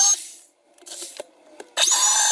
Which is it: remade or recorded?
recorded